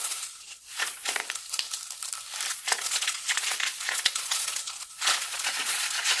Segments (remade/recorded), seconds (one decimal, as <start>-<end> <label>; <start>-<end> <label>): 0.0-1.2 remade; 1.2-2.5 recorded; 2.5-6.2 remade